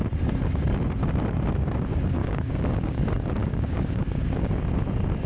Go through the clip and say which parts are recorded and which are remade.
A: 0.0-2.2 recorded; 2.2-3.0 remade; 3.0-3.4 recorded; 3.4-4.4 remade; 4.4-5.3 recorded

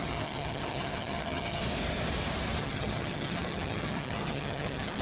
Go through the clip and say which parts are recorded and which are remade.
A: 0.0-1.6 remade; 1.6-2.6 recorded; 2.6-5.0 remade

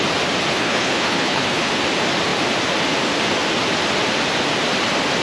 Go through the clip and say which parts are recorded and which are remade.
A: 0.0-0.5 recorded; 0.5-1.7 remade; 1.7-5.2 recorded

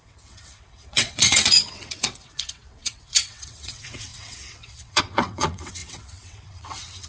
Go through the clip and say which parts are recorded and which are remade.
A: 0.0-7.1 remade